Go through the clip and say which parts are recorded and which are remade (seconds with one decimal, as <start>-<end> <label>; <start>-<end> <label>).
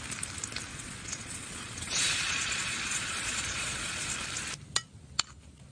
0.0-0.7 recorded; 0.7-4.1 remade; 4.1-5.7 recorded